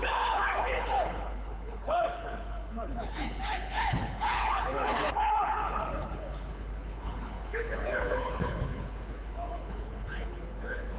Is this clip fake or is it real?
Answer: fake